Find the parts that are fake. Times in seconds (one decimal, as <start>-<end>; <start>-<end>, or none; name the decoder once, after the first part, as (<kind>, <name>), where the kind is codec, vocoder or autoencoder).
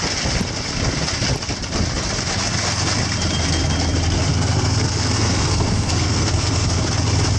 4.3-6.8 (codec, SNAC)